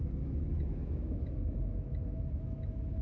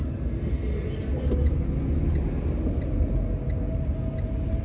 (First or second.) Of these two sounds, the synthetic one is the first